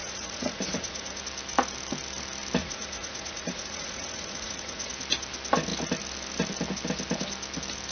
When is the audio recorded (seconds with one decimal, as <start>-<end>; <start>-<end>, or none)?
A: 1.2-2.6; 4.9-7.9

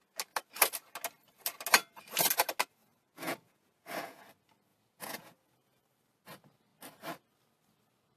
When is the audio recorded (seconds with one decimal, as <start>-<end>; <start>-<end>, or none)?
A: 0.0-2.8; 4.2-4.7; 5.8-8.2

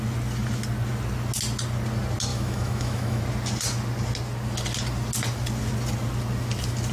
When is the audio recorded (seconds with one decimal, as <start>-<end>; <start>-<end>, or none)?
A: 0.0-2.3; 3.2-6.9